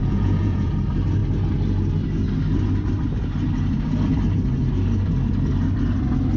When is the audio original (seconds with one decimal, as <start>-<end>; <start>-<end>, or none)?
0.7-6.4

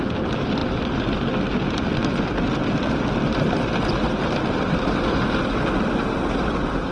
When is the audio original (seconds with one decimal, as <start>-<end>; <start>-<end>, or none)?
0.0-6.9